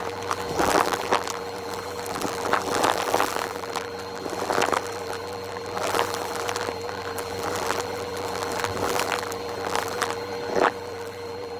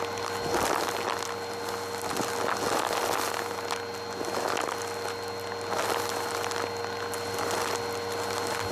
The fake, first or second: first